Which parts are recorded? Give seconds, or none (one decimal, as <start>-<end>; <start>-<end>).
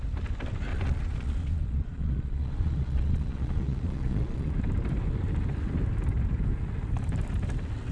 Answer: 0.0-0.7; 4.5-7.9